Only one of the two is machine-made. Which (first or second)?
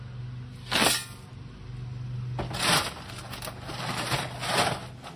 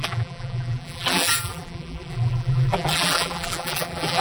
second